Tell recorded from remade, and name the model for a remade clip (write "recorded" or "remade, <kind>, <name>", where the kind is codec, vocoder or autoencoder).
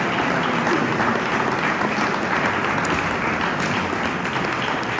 recorded